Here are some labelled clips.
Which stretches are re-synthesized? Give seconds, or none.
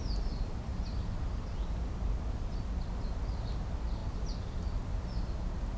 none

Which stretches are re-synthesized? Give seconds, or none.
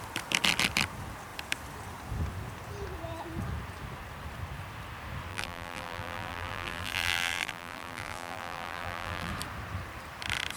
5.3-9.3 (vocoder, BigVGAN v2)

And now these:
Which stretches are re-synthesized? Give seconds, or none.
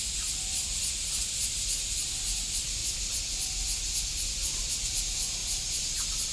none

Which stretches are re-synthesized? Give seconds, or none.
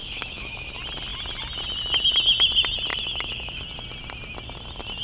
0.0-0.7 (autoencoder, DAC-VAE); 2.9-3.6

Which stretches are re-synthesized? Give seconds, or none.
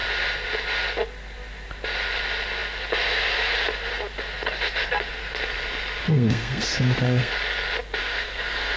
6.0-7.3 (codec, SNAC); 8.0-8.8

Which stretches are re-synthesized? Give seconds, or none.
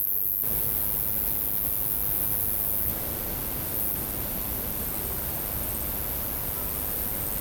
none